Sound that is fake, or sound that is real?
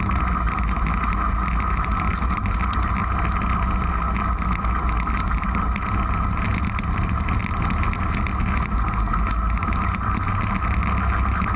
real